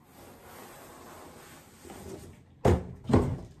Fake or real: real